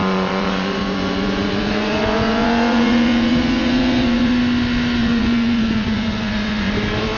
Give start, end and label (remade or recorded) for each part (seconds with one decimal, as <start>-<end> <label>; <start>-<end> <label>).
0.0-4.3 remade; 4.3-5.0 recorded; 5.0-6.7 remade; 6.7-7.2 recorded